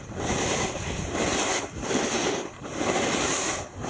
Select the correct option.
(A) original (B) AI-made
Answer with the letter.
B